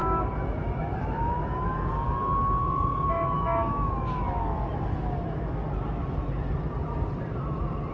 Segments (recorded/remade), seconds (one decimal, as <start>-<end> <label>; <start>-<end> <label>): 0.0-5.6 remade; 5.6-7.9 recorded